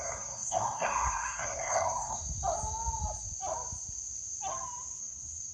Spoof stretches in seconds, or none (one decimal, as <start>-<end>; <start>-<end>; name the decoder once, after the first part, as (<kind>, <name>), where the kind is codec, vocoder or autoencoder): 0.0-2.2 (codec, SNAC); 5.0-5.5